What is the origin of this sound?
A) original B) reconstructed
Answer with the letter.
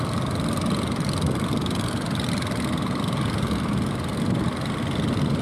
A